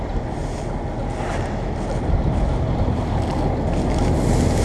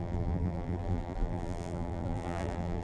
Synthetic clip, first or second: second